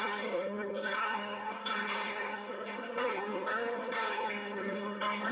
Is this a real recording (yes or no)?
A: no